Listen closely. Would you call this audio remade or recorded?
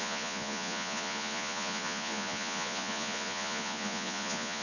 remade